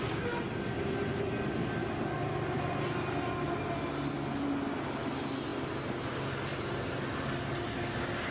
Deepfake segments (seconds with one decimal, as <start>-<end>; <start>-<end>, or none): none